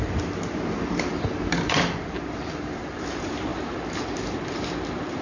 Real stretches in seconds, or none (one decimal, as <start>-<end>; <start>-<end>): none

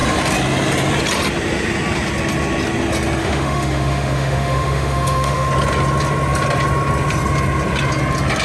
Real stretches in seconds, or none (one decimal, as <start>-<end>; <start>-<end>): 0.0-3.2; 5.5-8.4

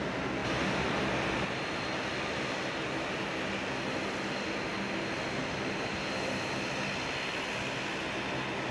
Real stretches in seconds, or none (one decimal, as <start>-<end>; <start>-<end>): 0.0-8.7

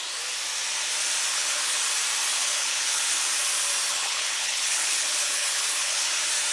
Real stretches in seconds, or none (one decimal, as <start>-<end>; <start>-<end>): 0.0-1.3; 1.8-2.3; 3.1-3.9; 6.1-6.5

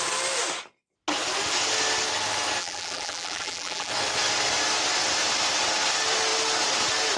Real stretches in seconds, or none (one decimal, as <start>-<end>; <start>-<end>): 0.0-2.6; 3.9-7.2

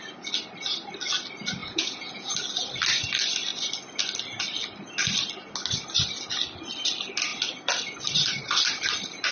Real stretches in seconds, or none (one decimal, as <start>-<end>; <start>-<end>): 0.0-1.6; 2.3-9.3

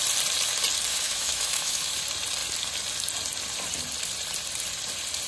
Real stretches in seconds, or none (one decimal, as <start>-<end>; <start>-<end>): 0.0-0.9; 2.0-5.3

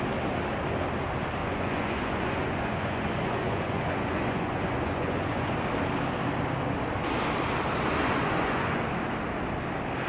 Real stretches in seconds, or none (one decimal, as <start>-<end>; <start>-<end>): 0.0-1.4; 5.6-8.0; 8.8-10.1